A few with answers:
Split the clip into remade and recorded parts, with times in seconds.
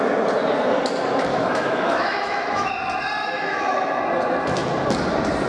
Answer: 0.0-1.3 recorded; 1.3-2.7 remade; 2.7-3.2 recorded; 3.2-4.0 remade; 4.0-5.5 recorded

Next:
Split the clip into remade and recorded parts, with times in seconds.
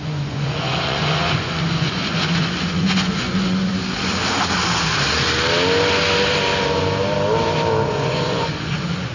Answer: 0.0-3.7 remade; 3.7-7.9 recorded; 7.9-9.1 remade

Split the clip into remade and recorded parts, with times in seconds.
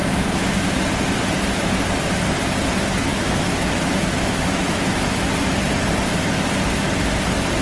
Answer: 0.0-0.8 remade; 0.8-3.1 recorded; 3.1-5.2 remade; 5.2-7.6 recorded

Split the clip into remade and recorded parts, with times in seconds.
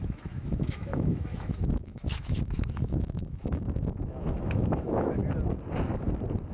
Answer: 0.0-5.2 remade; 5.2-6.5 recorded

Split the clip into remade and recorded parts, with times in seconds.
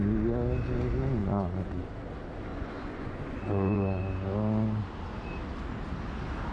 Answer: 0.0-1.2 recorded; 1.2-1.8 remade; 1.8-2.5 recorded; 2.5-4.0 remade; 4.0-6.5 recorded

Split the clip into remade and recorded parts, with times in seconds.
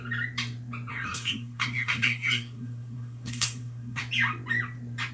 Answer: 0.0-0.9 recorded; 0.9-4.0 remade; 4.0-5.1 recorded